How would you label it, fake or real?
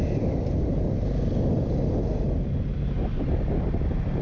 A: real